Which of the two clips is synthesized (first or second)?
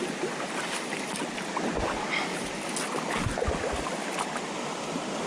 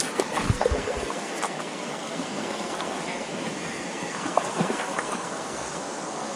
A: second